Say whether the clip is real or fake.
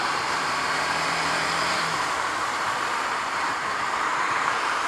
fake